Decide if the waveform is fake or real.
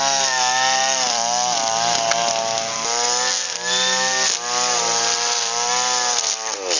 real